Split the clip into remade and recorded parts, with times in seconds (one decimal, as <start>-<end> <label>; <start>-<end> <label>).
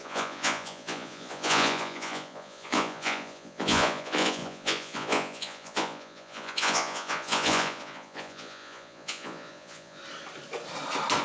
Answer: 0.0-10.0 remade; 10.0-11.2 recorded